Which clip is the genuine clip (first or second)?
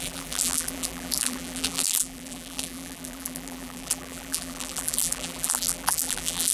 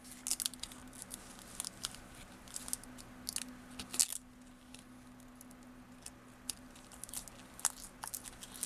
second